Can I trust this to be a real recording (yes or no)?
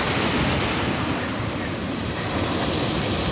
yes